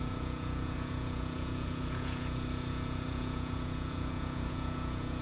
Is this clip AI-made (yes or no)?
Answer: yes